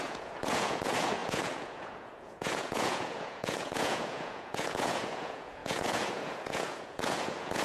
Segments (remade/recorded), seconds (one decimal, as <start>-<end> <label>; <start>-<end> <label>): 0.0-7.6 remade